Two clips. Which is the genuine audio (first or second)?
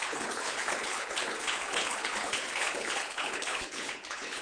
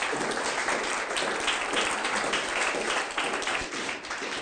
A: second